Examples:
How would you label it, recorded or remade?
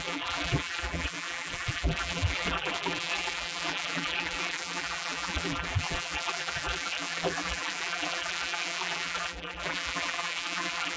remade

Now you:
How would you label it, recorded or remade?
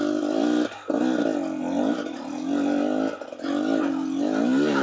recorded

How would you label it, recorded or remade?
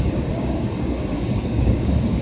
remade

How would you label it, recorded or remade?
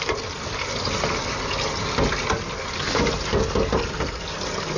recorded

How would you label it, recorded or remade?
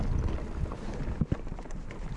recorded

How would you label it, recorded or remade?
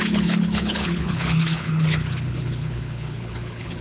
remade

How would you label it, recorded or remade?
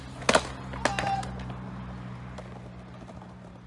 recorded